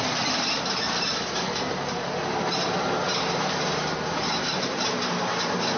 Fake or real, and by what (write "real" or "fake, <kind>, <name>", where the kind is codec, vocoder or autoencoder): fake, vocoder, BigVGAN v2